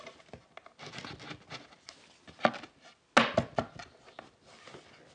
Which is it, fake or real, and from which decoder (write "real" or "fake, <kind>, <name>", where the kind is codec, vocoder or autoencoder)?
real